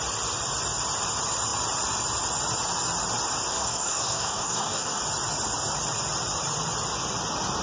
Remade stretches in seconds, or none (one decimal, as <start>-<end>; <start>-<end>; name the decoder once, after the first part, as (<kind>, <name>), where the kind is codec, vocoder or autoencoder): 3.5-5.0 (codec, SNAC)